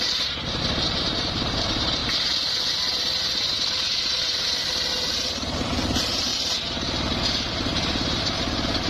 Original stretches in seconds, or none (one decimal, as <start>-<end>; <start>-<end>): 2.0-2.7; 6.3-7.5